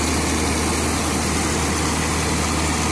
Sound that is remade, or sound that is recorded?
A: recorded